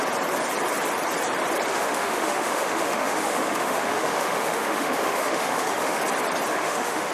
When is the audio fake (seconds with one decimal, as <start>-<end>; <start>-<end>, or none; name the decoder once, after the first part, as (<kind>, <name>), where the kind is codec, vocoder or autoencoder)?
1.7-6.0 (autoencoder, DAC-VAE); 6.5-7.1